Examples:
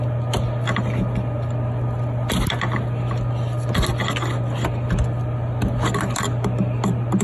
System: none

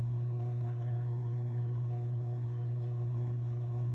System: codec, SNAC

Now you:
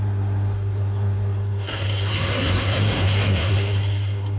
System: codec, SNAC